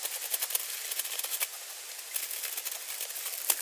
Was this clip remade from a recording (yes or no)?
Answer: no